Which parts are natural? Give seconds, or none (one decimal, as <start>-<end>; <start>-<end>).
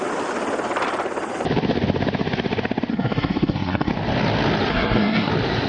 0.0-2.9; 3.9-4.7; 5.3-5.7